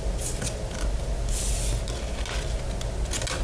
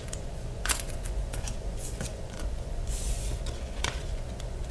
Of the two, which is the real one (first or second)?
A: first